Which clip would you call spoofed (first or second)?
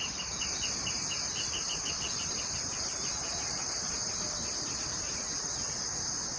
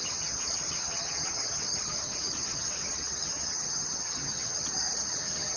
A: second